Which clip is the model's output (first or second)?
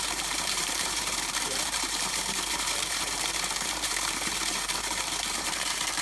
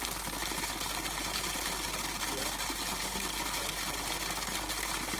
first